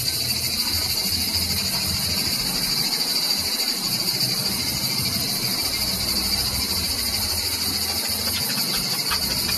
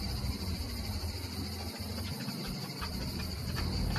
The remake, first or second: second